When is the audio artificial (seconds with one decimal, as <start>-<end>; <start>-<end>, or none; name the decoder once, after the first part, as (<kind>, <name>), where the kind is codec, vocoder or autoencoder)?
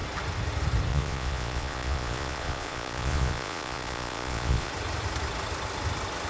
0.9-4.7 (vocoder, Vocos)